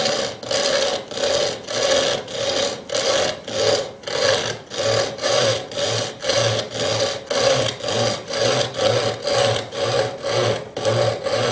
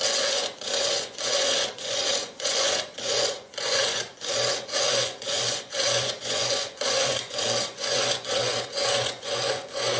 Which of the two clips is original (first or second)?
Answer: first